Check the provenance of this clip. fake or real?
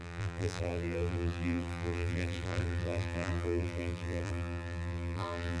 fake